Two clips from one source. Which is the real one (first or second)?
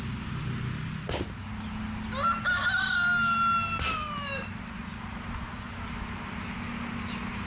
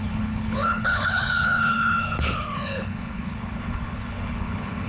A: first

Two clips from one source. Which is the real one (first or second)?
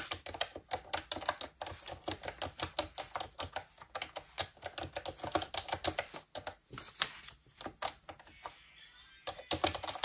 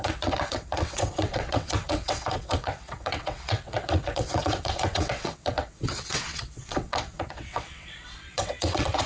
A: first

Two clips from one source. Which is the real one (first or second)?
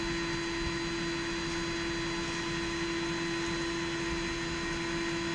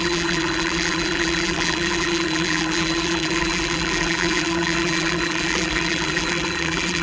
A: first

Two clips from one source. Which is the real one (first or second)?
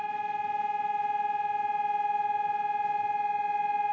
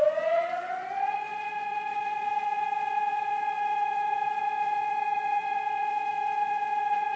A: first